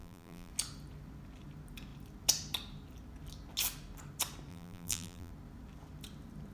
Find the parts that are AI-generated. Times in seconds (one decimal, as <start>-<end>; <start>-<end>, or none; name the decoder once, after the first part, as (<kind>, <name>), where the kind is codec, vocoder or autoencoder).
0.0-0.5 (vocoder, BigVGAN v2); 4.5-5.3